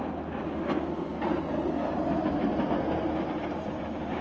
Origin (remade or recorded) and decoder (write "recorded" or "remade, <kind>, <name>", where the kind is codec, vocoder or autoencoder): recorded